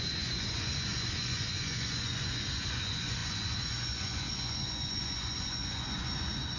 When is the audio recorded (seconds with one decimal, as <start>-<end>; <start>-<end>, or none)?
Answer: none